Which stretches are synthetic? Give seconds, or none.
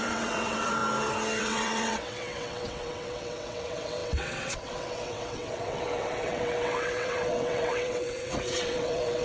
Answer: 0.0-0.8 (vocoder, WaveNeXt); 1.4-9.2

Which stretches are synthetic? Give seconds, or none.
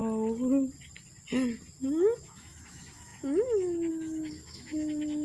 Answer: 1.8-5.2 (autoencoder, DAC-VAE)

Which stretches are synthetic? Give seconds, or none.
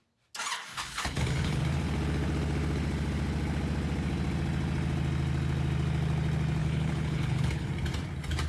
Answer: 0.7-1.6 (codec, HILCodec); 6.6-7.7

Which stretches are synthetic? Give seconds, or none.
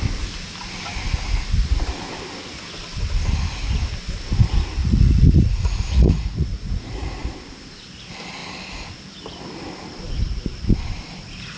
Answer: 4.8-7.2 (vocoder, Vocos)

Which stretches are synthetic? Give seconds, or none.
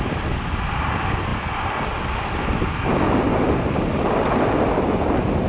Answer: none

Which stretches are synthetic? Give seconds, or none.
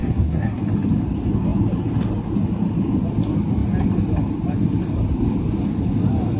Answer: 0.0-0.6 (codec, SNAC)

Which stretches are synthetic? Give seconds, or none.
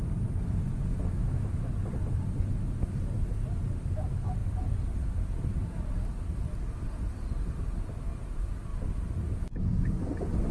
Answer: 0.9-1.7 (autoencoder, DAC-VAE)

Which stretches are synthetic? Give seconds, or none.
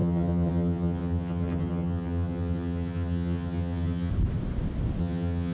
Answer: 0.0-4.1 (vocoder, HiFi-GAN); 5.0-5.5